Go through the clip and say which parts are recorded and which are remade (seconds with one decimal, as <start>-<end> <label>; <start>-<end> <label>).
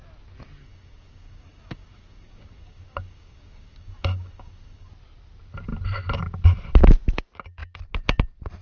0.0-0.6 recorded; 0.6-4.9 remade; 4.9-8.6 recorded